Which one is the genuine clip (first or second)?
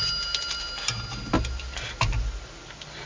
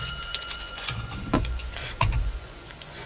first